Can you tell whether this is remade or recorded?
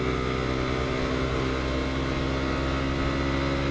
recorded